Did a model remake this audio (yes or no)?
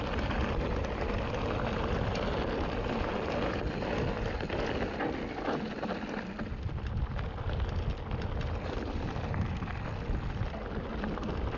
no